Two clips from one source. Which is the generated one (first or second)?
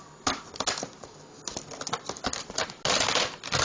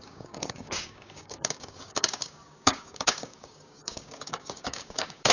second